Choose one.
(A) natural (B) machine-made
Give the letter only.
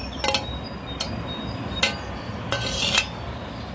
A